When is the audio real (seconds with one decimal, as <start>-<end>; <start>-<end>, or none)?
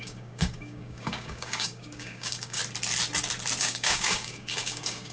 2.6-3.6